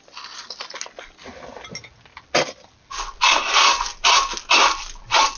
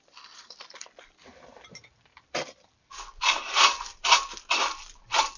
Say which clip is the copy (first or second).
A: second